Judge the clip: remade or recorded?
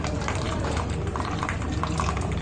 remade